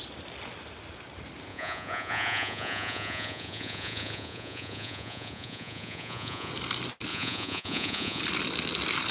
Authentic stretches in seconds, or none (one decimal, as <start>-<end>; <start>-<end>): 0.0-1.5; 6.5-7.1; 8.2-9.1

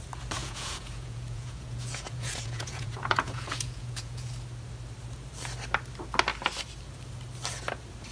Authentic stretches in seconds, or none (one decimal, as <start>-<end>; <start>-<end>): 0.0-0.4; 4.3-8.1

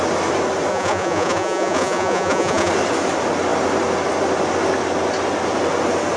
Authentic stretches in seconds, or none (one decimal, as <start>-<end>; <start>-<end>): 0.0-0.7; 2.7-6.2

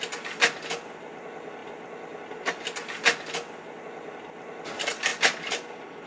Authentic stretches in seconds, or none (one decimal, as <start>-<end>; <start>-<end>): 0.0-6.1

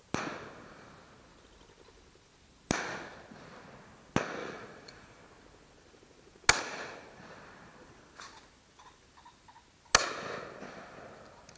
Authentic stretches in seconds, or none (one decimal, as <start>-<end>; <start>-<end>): 0.0-4.4; 5.2-11.6

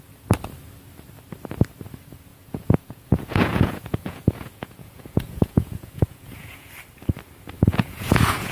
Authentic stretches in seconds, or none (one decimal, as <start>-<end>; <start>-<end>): 0.0-2.3; 6.7-7.7

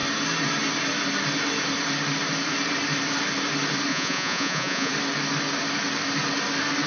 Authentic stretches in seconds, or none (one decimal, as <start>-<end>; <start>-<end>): 0.0-3.9; 4.9-6.9